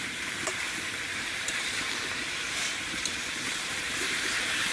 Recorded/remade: remade